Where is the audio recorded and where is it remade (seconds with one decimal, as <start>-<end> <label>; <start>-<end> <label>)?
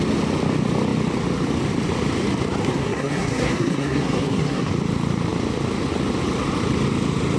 0.0-2.6 recorded; 2.6-4.7 remade; 4.7-7.4 recorded